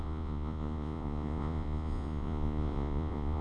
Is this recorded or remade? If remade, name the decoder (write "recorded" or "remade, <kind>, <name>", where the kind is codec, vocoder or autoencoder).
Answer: remade, vocoder, Vocos